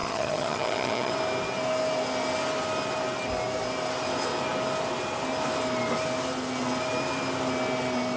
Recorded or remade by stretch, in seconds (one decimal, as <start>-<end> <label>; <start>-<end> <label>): 0.0-1.1 remade; 1.1-8.2 recorded